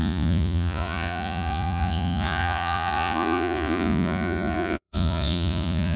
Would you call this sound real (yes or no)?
no